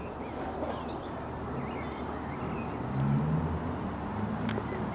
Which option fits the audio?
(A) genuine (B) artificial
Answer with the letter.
A